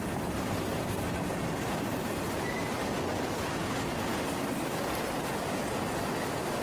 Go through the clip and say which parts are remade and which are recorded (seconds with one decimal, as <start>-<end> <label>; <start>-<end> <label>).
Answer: 0.0-0.7 recorded; 0.7-1.7 remade; 1.7-6.6 recorded